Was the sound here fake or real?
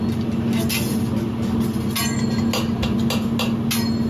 real